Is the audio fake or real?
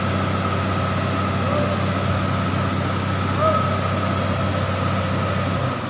real